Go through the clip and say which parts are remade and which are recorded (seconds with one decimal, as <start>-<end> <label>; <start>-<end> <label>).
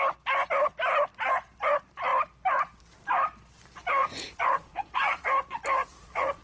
0.0-4.0 recorded; 4.0-5.3 remade; 5.3-5.8 recorded; 5.8-6.4 remade